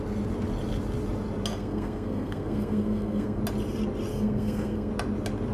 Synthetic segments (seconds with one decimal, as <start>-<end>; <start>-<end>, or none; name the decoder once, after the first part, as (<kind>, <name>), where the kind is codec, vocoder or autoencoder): 1.5-3.4 (codec, SNAC); 4.1-4.9